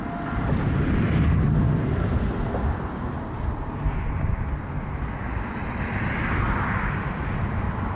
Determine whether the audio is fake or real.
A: real